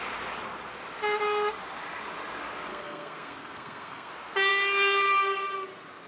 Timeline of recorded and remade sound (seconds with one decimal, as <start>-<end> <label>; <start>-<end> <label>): 0.0-2.7 recorded; 2.7-4.1 remade; 4.1-6.1 recorded